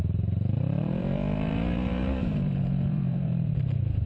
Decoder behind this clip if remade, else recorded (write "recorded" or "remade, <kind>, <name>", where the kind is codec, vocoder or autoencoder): remade, vocoder, BigVGAN v2